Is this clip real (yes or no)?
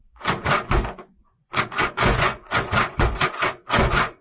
no